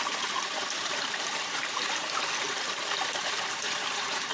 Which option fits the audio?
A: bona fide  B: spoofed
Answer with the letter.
B